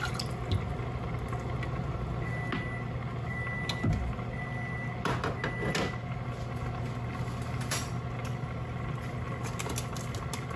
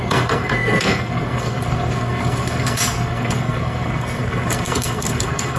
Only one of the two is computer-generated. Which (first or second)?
second